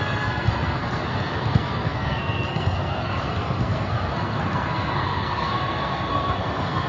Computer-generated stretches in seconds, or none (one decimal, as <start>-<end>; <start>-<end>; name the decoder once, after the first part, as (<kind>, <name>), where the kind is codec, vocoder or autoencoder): 0.0-6.9 (codec, SNAC)